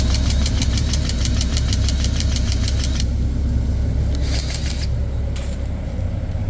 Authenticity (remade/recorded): remade